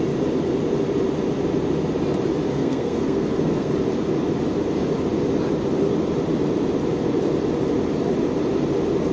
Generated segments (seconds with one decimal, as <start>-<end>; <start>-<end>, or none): 2.5-3.7